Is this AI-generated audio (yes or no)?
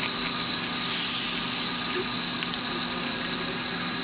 no